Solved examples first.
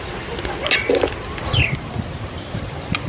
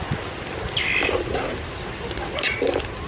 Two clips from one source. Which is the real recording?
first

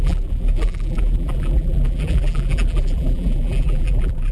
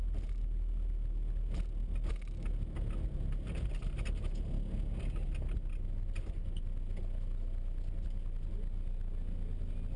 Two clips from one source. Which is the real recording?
second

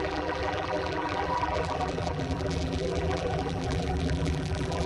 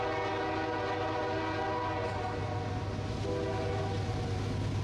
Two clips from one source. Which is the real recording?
second